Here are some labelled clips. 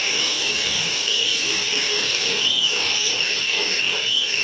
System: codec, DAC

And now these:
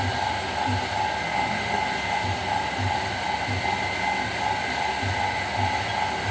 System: none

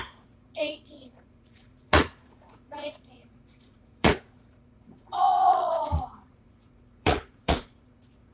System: vocoder, Vocos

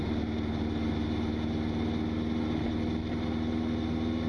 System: none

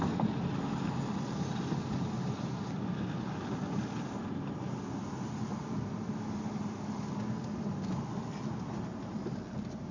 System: none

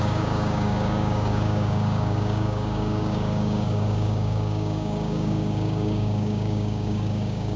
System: codec, DAC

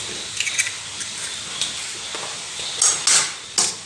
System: none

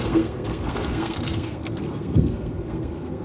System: codec, SNAC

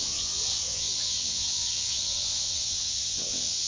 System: vocoder, WaveNeXt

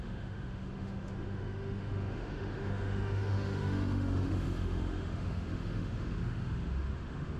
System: autoencoder, DAC-VAE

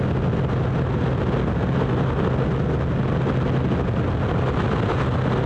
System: none